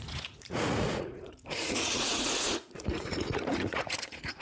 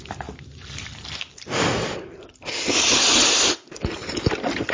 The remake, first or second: first